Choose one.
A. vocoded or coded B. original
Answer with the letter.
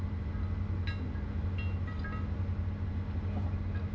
B